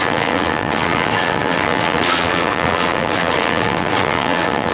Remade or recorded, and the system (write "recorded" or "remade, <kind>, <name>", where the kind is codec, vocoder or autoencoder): remade, vocoder, Vocos